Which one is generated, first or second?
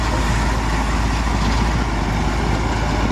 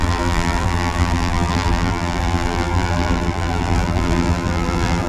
second